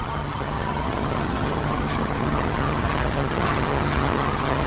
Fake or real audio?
fake